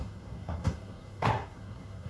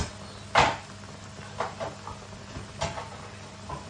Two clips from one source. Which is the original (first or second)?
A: second